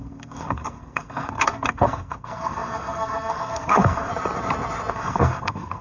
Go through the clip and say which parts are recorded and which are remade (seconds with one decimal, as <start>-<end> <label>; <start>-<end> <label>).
0.0-4.1 remade; 4.1-4.9 recorded; 4.9-5.8 remade